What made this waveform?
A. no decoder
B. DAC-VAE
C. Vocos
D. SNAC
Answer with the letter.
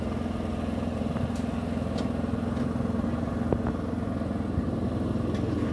A